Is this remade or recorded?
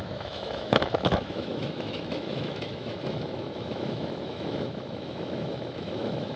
remade